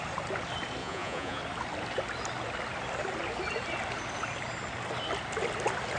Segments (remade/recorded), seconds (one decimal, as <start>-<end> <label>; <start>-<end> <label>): 0.0-0.8 recorded; 0.8-1.4 remade; 1.4-6.0 recorded